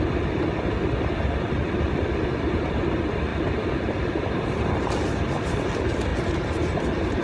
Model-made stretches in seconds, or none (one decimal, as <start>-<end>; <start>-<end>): 3.3-4.9